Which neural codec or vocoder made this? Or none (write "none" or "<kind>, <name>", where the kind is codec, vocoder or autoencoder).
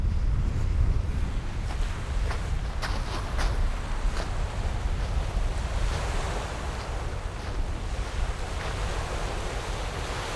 none